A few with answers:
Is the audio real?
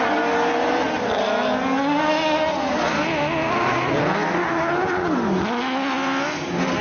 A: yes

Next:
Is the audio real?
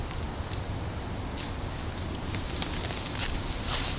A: yes